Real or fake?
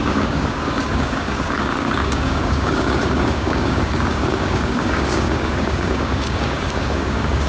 fake